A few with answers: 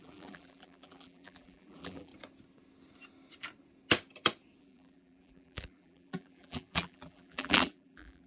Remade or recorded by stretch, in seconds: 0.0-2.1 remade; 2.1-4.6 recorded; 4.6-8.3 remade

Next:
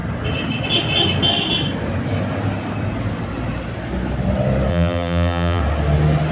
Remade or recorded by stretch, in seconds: 0.0-4.7 recorded; 4.7-5.6 remade; 5.6-6.3 recorded